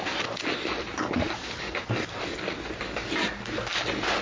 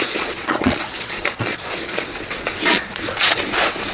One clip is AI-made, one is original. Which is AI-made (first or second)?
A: second